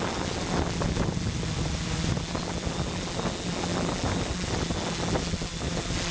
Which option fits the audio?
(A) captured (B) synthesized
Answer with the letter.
A